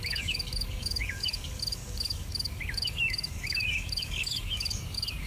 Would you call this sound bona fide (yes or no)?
no